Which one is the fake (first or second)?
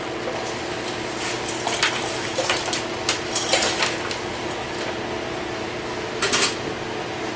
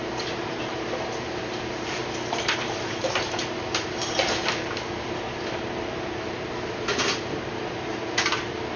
second